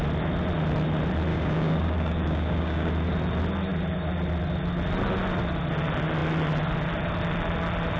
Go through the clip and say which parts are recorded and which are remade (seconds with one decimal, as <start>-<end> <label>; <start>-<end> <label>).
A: 0.0-1.3 recorded; 1.3-2.9 remade; 2.9-8.0 recorded